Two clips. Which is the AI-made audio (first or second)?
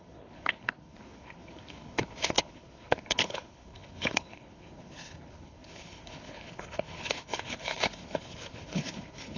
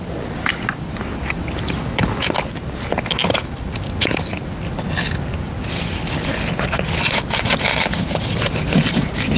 first